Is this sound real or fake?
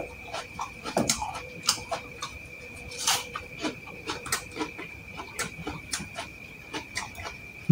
fake